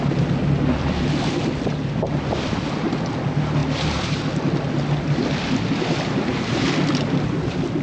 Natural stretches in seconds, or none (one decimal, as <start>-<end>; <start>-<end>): 0.0-7.8